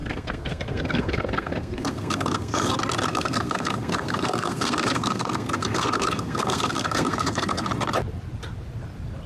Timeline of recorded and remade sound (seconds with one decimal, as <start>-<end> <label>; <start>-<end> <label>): 0.0-2.7 remade; 2.7-3.1 recorded; 3.1-7.7 remade; 7.7-9.3 recorded